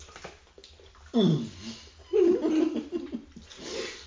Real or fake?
real